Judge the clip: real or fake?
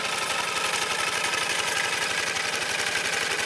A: real